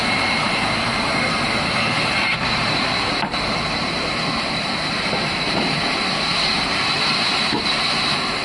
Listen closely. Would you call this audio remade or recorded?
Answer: remade